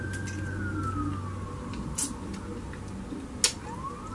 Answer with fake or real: real